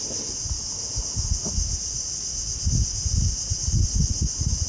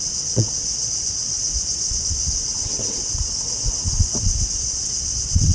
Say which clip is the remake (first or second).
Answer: second